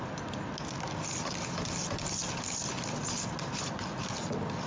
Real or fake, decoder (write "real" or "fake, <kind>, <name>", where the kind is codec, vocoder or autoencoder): real